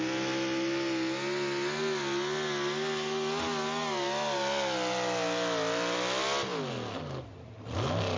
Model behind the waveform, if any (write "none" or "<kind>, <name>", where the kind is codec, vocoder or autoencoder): none